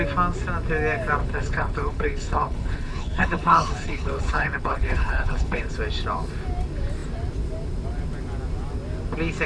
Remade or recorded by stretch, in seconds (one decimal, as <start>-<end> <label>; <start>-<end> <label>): 0.0-1.2 recorded; 1.2-5.7 remade; 5.7-9.5 recorded